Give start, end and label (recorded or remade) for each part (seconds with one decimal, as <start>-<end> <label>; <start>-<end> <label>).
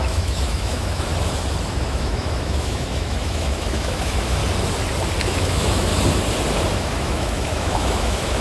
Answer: 0.0-1.1 remade; 1.1-1.7 recorded; 1.7-4.4 remade; 4.4-5.2 recorded; 5.2-5.9 remade; 5.9-6.7 recorded; 6.7-8.4 remade